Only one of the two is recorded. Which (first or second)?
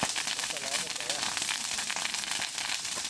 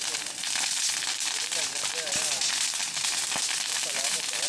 second